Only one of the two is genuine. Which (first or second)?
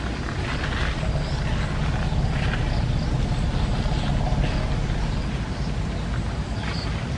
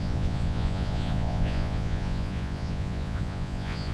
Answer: first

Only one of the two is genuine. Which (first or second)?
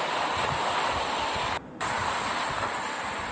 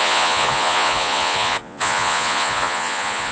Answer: first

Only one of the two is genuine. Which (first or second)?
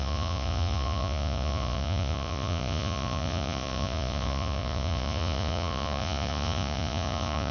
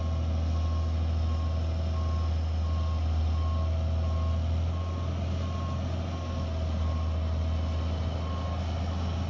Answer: second